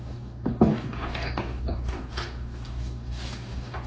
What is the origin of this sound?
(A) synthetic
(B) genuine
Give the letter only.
A